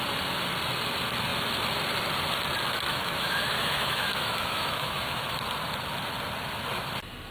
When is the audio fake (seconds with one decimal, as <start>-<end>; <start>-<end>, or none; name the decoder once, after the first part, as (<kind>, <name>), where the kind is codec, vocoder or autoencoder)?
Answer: 2.9-5.4 (autoencoder, DAC-VAE)